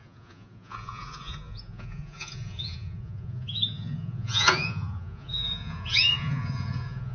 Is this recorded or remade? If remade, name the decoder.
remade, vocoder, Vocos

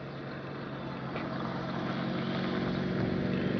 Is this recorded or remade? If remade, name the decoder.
recorded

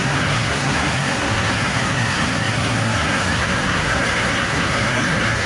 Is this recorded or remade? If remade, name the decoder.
remade, codec, SNAC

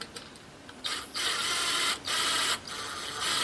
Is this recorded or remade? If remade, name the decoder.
recorded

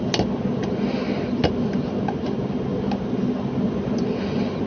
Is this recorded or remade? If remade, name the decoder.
recorded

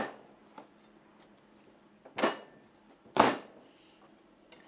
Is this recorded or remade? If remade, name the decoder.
recorded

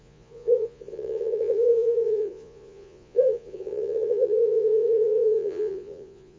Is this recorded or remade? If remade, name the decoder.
remade, vocoder, Vocos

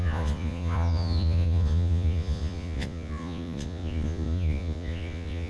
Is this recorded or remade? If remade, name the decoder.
remade, vocoder, Vocos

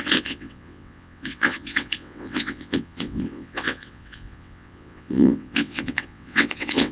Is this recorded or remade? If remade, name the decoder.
remade, vocoder, WaveNeXt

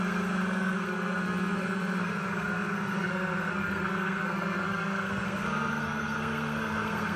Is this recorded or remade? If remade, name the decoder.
remade, codec, SNAC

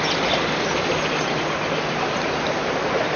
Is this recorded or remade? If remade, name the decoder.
recorded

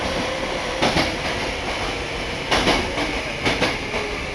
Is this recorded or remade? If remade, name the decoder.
recorded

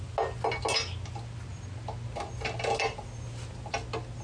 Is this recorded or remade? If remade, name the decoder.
recorded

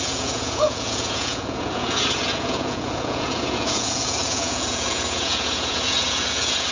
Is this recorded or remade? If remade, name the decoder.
remade, vocoder, Vocos